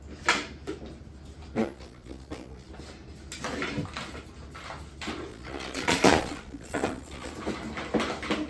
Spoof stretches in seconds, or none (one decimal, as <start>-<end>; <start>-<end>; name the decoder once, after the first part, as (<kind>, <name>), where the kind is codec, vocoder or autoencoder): 1.6-2.7 (vocoder, Vocos); 5.3-7.3